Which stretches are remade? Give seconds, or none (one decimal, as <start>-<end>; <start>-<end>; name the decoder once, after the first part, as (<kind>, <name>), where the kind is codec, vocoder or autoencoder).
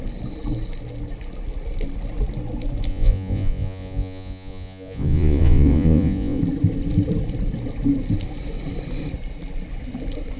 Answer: 2.9-6.4 (vocoder, Vocos)